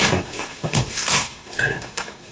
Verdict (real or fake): fake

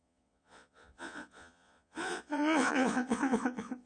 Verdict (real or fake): fake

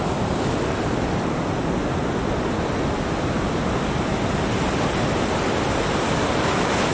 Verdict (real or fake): real